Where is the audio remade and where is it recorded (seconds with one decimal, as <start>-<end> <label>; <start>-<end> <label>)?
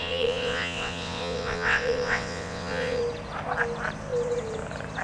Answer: 0.0-3.0 remade; 3.0-5.0 recorded